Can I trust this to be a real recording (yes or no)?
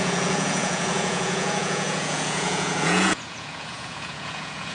no